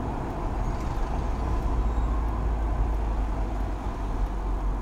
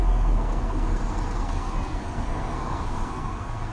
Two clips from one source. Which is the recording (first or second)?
first